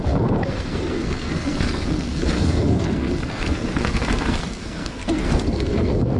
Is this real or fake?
fake